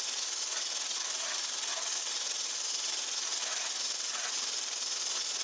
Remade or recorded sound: recorded